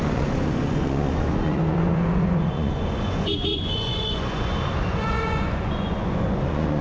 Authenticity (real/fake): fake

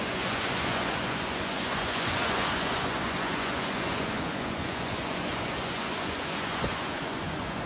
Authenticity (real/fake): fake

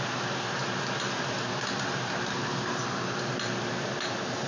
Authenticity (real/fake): real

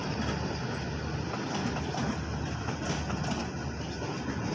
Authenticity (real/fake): real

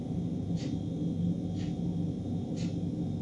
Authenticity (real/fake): real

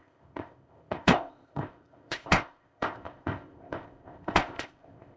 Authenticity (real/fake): fake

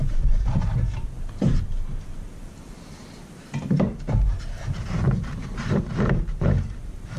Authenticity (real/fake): fake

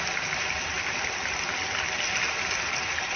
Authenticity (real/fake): real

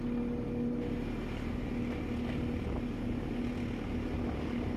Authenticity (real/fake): real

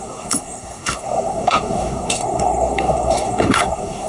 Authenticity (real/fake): fake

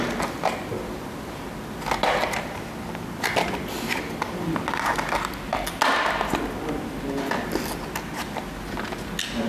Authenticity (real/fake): real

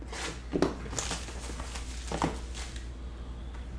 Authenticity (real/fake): real